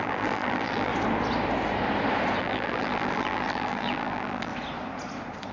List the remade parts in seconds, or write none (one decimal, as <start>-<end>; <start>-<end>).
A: 0.0-0.9; 2.4-4.5